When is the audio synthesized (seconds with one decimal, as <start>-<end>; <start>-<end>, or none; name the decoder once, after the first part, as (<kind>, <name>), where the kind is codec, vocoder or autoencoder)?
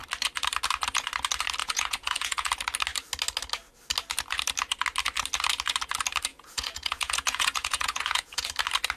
1.6-2.5 (vocoder, Vocos); 6.3-8.5